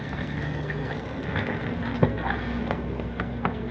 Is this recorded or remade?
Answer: remade